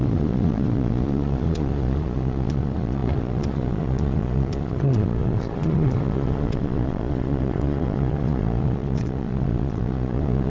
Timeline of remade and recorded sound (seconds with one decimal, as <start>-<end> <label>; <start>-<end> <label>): 0.0-10.5 remade